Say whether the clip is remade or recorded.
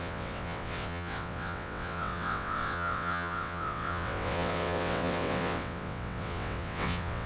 remade